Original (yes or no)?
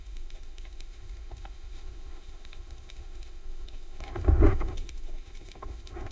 no